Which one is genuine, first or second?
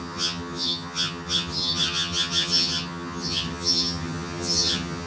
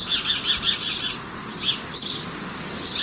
second